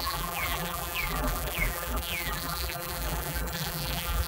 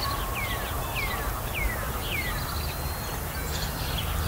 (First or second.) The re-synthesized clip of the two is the first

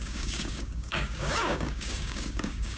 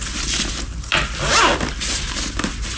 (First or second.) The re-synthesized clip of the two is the first